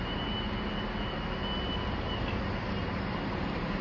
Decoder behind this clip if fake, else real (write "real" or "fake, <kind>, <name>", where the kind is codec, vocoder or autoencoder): real